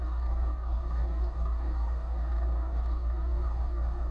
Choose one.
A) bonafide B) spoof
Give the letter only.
B